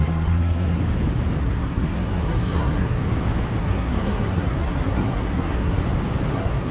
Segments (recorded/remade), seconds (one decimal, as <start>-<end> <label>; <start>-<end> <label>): 0.0-0.8 remade; 0.8-1.4 recorded; 1.4-3.0 remade; 3.0-3.6 recorded; 3.6-5.8 remade; 5.8-6.3 recorded; 6.3-6.7 remade